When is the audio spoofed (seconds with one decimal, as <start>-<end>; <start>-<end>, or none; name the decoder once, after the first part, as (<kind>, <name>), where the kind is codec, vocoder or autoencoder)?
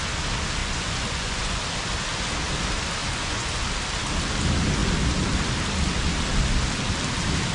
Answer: 0.6-1.6 (vocoder, Vocos); 3.0-3.6